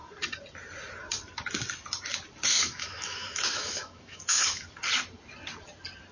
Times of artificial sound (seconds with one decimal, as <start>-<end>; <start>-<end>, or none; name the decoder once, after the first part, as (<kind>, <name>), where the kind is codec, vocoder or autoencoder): 2.6-4.7 (autoencoder, DAC-VAE)